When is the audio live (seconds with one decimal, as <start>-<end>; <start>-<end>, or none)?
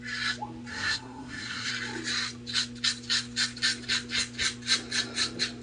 0.0-0.7; 1.7-5.6